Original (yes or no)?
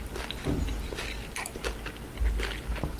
yes